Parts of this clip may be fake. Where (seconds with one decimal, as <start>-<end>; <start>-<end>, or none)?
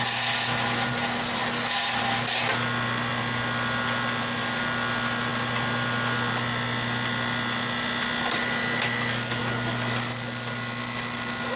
none